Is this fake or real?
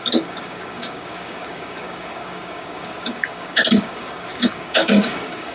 fake